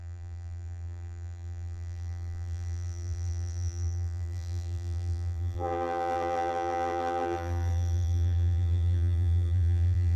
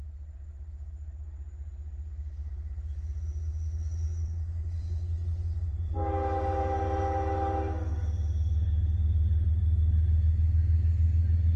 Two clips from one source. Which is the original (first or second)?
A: second